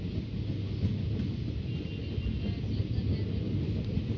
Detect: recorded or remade recorded